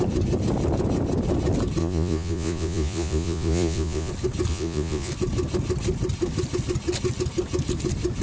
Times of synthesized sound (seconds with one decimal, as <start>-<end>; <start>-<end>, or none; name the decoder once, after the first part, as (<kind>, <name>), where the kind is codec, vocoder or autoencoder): 1.8-4.1 (vocoder, Vocos); 4.5-5.1